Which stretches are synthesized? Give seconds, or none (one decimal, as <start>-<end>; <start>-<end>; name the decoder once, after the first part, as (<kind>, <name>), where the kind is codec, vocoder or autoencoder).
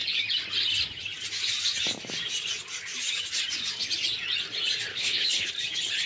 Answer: 4.9-5.5 (codec, HILCodec)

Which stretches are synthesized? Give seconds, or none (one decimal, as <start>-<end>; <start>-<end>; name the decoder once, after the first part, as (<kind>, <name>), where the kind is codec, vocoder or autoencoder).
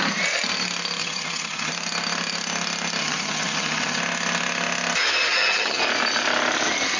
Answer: 1.0-1.7 (vocoder, HiFi-GAN); 3.0-4.0; 5.3-5.8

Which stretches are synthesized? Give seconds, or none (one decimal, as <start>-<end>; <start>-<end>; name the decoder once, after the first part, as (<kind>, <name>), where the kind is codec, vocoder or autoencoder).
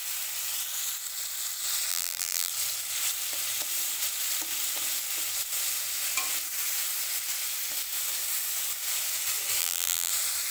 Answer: 1.9-2.5 (vocoder, BigVGAN v2); 9.6-10.1